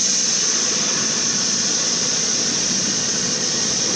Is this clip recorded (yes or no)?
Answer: no